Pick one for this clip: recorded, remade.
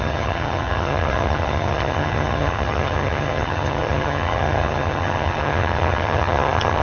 remade